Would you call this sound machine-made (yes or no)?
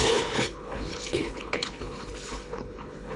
yes